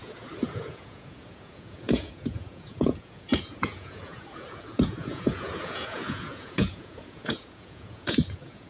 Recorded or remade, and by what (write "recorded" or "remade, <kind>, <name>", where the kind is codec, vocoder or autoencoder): remade, vocoder, Vocos